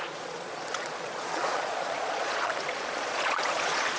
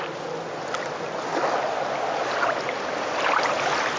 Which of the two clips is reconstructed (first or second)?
first